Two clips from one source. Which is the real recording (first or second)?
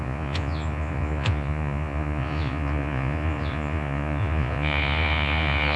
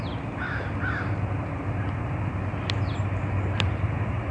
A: second